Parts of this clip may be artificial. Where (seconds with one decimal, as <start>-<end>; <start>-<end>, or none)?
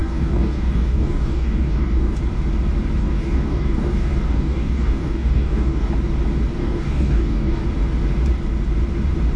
0.0-2.2; 3.0-5.9; 6.6-7.6